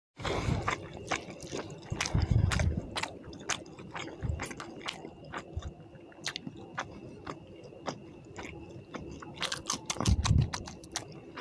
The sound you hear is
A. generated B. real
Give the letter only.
B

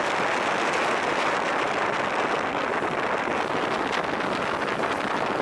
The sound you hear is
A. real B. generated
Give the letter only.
A